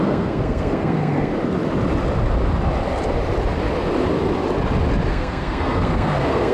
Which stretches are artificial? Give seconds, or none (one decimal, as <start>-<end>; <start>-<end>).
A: 0.0-1.3; 5.1-6.5